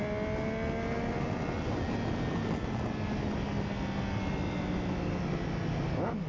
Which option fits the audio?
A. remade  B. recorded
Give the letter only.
B